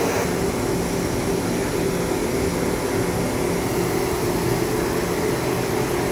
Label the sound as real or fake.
real